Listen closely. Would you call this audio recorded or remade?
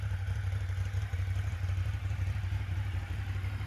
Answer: remade